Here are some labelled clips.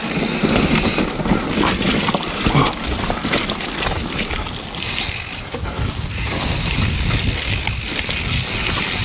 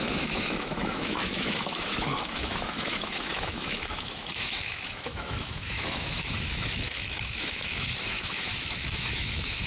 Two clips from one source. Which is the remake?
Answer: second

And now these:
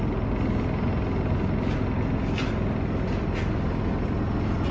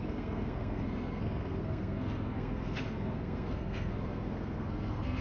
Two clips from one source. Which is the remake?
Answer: second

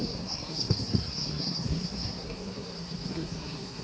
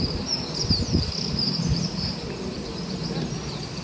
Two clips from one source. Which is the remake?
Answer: first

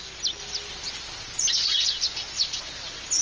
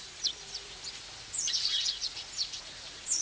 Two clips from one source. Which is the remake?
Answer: second